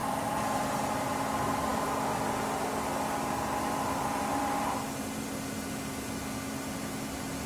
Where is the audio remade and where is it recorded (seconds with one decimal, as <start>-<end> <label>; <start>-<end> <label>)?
0.0-0.9 remade; 0.9-7.5 recorded

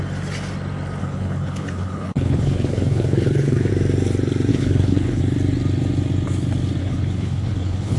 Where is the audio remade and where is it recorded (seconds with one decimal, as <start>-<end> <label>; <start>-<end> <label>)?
0.0-1.0 recorded; 1.0-3.7 remade; 3.7-4.5 recorded; 4.5-5.2 remade; 5.2-6.8 recorded; 6.8-8.0 remade

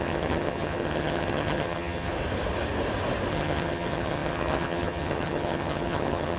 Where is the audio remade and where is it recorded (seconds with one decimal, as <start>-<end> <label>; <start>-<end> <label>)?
0.0-2.1 remade; 2.1-3.3 recorded; 3.3-6.4 remade

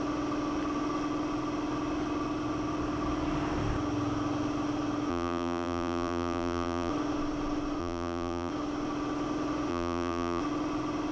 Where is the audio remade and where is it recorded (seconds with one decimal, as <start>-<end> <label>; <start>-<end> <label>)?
0.0-5.1 recorded; 5.1-6.9 remade; 6.9-7.8 recorded; 7.8-8.5 remade; 8.5-9.7 recorded; 9.7-10.4 remade; 10.4-11.1 recorded

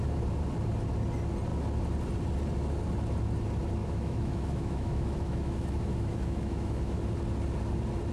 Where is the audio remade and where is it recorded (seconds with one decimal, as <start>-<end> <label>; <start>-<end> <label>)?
0.0-3.8 recorded; 3.8-7.0 remade; 7.0-8.1 recorded

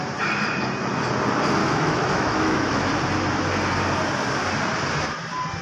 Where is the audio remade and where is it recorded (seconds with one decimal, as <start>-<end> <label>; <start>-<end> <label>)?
0.0-1.6 recorded; 1.6-2.9 remade; 2.9-5.6 recorded

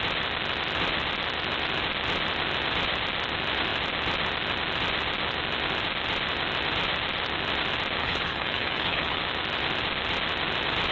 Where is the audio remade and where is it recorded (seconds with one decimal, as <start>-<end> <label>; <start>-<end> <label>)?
0.0-8.0 recorded; 8.0-9.2 remade; 9.2-10.9 recorded

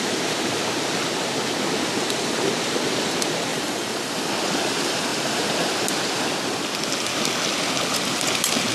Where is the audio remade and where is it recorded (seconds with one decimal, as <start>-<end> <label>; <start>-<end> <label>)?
0.0-3.5 recorded; 3.5-4.3 remade; 4.3-8.7 recorded